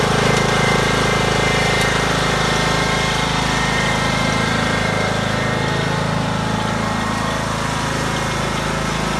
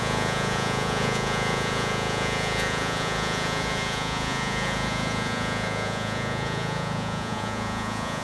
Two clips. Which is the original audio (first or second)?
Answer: first